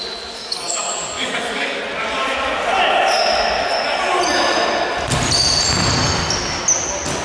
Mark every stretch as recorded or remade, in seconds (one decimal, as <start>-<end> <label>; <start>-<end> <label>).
0.0-0.4 recorded; 0.4-1.8 remade; 1.8-7.2 recorded